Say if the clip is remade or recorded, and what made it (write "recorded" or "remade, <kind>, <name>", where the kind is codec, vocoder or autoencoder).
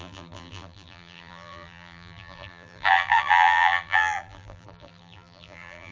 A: remade, vocoder, BigVGAN v2